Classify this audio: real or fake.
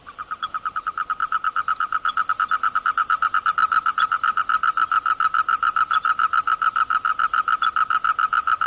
real